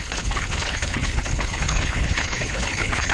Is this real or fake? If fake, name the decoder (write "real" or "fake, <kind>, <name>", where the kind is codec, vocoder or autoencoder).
fake, codec, HILCodec